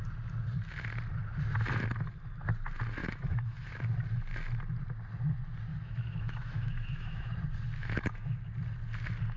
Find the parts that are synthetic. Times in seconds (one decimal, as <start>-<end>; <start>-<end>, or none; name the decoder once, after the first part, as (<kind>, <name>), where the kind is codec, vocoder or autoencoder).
3.0-3.7 (autoencoder, DAC-VAE); 5.7-7.3; 7.8-8.4